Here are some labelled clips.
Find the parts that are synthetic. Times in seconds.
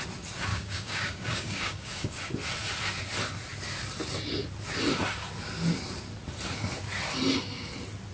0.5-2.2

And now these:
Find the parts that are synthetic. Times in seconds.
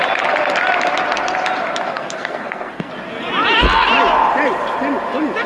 1.9-2.9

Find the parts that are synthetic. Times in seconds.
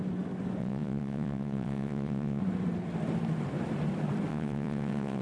0.6-2.4; 4.3-5.2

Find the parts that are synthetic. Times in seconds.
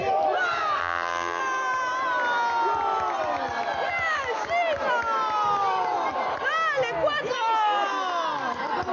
0.8-1.4